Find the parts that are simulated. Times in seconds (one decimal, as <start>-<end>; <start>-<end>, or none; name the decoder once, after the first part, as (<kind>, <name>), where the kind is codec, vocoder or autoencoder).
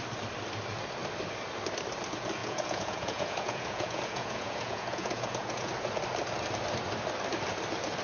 2.4-5.7 (vocoder, Vocos)